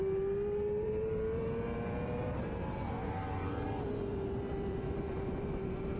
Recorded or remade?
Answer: remade